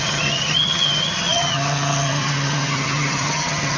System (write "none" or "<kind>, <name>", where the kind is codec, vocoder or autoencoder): vocoder, HiFi-GAN